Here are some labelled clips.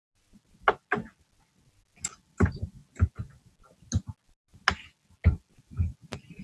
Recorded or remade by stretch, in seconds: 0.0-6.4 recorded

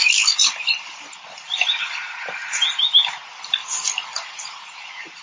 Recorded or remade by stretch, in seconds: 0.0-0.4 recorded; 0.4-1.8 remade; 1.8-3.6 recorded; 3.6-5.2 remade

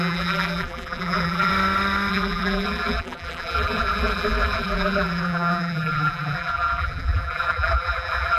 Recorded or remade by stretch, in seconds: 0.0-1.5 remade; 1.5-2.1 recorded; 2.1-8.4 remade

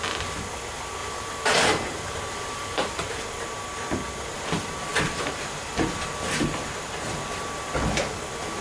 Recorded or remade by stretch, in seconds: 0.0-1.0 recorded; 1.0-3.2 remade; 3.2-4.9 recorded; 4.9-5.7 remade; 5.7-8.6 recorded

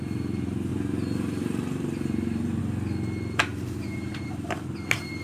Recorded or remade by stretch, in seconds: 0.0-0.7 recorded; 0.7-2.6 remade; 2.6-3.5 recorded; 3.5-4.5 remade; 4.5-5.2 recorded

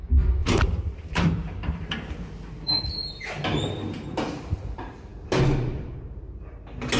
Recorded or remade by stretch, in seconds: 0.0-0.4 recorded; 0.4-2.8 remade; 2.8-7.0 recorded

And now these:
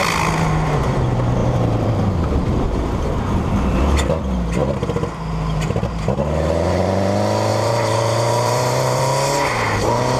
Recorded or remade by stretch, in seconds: 0.0-1.4 recorded; 1.4-3.8 remade; 3.8-7.5 recorded; 7.5-9.0 remade; 9.0-10.2 recorded